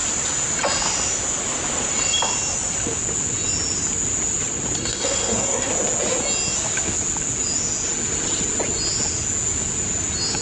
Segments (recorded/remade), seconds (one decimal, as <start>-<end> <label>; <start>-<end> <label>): 0.0-4.8 recorded; 4.8-5.7 remade; 5.7-10.4 recorded